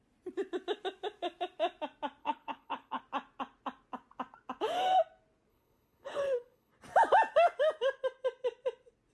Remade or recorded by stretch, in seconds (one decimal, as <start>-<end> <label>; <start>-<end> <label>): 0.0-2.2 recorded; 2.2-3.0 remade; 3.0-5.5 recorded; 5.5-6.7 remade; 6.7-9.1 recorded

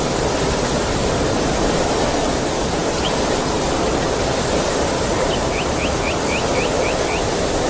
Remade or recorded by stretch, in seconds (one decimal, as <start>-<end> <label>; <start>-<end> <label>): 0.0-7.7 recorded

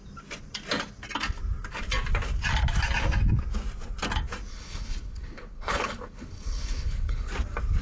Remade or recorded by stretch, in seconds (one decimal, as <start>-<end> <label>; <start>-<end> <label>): 0.0-4.5 recorded; 4.5-7.3 remade; 7.3-7.8 recorded

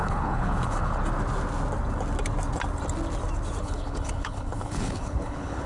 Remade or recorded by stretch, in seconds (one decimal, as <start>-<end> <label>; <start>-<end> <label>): 0.0-1.0 remade; 1.0-3.6 recorded; 3.6-5.7 remade

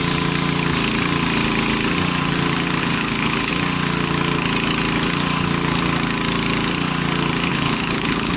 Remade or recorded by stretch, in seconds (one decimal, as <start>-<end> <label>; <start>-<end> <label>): 0.0-2.8 recorded; 2.8-3.5 remade; 3.5-7.5 recorded; 7.5-8.4 remade

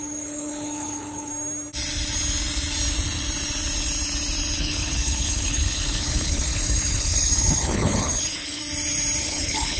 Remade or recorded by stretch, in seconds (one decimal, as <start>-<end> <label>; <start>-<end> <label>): 0.0-1.3 remade; 1.3-4.6 recorded; 4.6-8.6 remade; 8.6-9.2 recorded; 9.2-9.8 remade

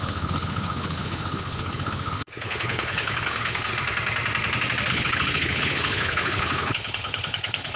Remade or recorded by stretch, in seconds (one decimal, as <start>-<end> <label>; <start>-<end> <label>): 0.0-3.7 remade; 3.7-4.9 recorded; 4.9-7.8 remade